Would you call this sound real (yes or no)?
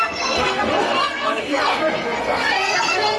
no